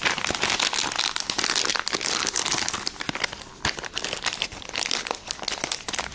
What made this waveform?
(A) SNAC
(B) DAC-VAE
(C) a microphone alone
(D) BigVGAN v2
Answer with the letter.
C